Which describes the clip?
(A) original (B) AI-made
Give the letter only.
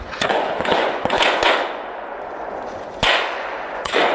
B